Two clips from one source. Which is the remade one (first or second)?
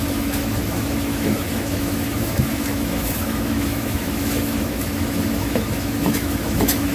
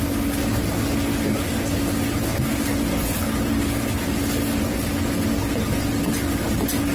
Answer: first